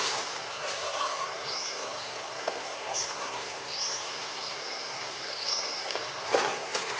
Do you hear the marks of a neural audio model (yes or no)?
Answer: yes